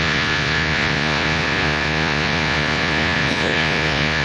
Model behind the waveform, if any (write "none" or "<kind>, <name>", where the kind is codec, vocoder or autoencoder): vocoder, Vocos